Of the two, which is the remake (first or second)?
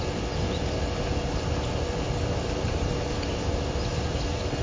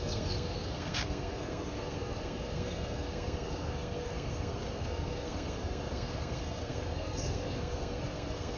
second